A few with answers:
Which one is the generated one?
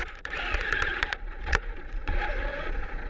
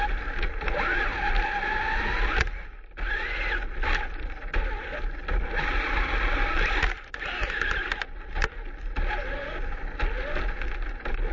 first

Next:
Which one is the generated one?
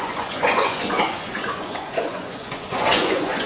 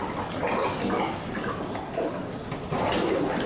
first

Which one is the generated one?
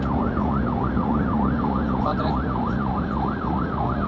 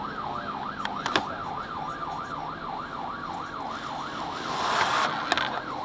first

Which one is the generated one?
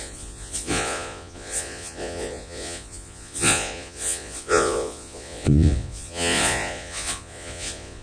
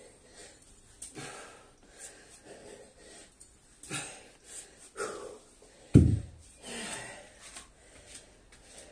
first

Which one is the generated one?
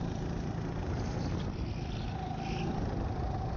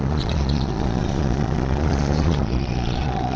second